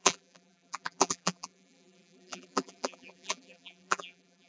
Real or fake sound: fake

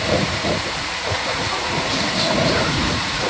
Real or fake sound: fake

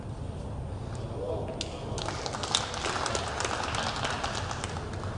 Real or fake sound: real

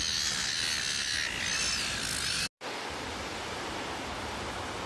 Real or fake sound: real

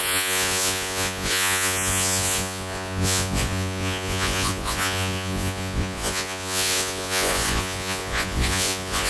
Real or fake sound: fake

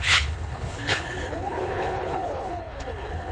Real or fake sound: fake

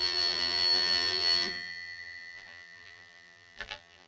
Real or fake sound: fake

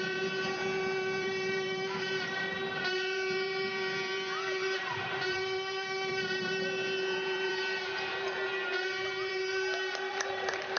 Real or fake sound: fake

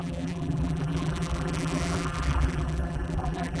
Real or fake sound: fake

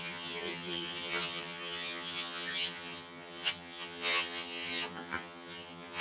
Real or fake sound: fake